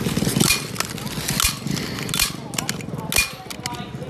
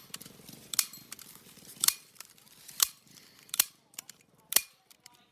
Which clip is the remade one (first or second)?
second